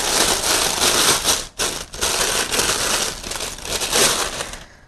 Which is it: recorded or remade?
recorded